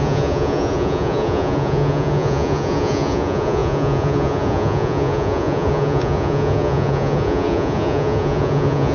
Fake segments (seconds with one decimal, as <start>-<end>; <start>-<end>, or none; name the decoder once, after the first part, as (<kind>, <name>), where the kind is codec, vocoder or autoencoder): 0.0-8.9 (vocoder, Vocos)